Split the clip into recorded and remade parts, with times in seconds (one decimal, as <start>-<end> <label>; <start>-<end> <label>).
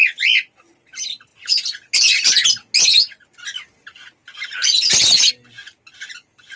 0.0-6.6 recorded